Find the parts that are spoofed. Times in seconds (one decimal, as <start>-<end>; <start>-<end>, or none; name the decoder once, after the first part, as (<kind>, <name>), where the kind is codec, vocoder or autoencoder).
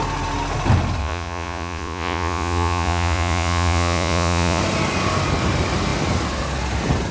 1.0-4.6 (vocoder, Vocos)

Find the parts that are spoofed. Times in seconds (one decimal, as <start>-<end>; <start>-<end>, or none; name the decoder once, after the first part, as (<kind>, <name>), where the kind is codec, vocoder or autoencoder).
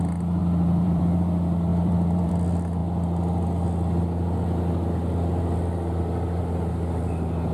0.4-1.0 (vocoder, BigVGAN v2); 1.7-2.3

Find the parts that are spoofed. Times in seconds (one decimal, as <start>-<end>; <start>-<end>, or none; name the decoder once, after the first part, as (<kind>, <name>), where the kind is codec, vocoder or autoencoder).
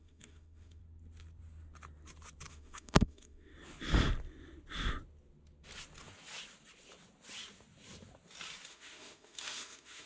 0.0-0.8 (autoencoder, DAC-VAE); 2.5-3.5; 8.7-10.1